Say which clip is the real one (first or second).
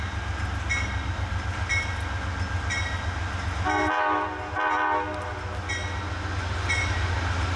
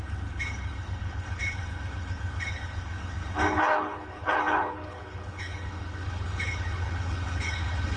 first